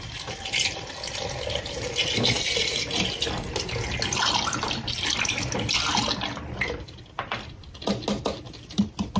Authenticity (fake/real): real